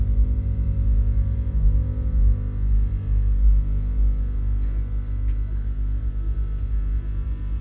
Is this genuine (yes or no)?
yes